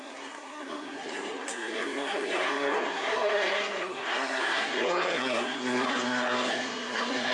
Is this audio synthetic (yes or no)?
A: yes